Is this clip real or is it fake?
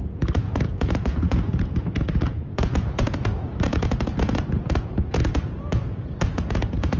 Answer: fake